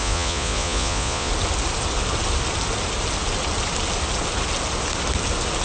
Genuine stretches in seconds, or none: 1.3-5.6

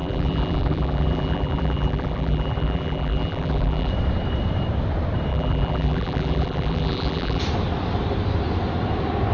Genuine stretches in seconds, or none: 3.9-5.3; 7.4-9.3

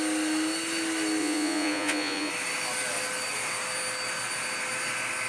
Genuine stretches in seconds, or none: 0.0-1.2; 2.3-5.3

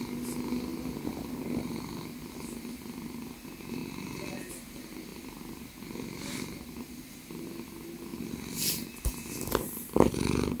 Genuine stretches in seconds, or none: 0.0-0.7; 2.3-5.1; 7.3-8.1; 9.1-10.6

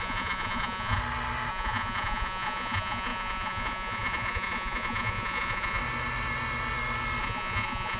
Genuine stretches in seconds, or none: 1.0-1.5; 5.8-7.2